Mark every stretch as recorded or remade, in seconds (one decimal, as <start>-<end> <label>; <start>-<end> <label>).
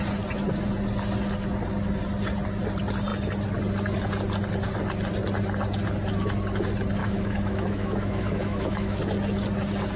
0.0-7.0 recorded; 7.0-9.0 remade; 9.0-10.0 recorded